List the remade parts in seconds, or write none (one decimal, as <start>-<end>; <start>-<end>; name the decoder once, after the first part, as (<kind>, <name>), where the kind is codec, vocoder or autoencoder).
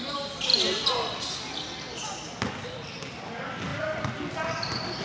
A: none